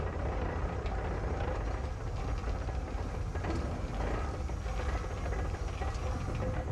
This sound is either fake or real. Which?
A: real